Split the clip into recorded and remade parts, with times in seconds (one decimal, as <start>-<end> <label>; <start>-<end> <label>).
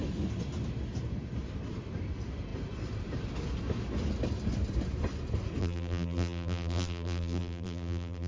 0.0-5.6 recorded; 5.6-8.3 remade